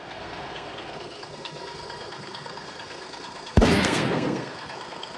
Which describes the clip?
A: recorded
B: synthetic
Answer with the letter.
B